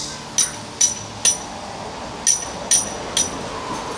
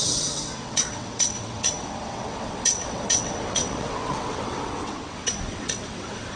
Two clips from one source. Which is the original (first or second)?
first